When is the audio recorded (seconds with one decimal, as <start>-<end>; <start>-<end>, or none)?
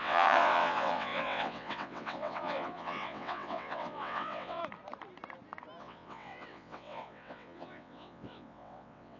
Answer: 4.6-5.8